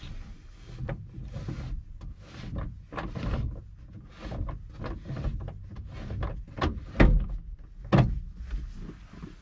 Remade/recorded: recorded